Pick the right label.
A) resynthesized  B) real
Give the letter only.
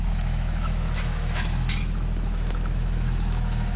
A